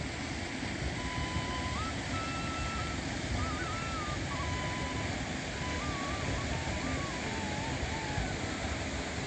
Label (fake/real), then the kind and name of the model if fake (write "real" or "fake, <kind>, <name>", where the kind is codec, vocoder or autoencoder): real